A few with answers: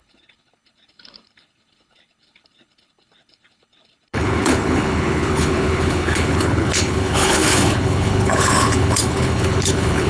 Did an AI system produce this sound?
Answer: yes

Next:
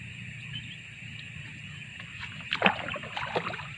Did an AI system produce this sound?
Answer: no